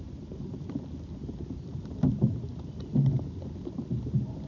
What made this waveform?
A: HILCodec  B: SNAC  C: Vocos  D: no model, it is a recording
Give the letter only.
D